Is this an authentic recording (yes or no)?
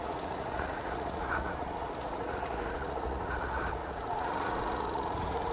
no